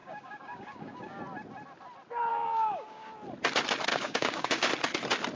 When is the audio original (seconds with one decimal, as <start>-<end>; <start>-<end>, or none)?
1.2-2.3; 3.1-3.9; 4.7-5.4